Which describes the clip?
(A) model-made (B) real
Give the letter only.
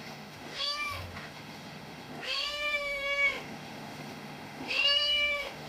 A